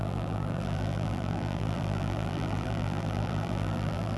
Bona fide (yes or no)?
no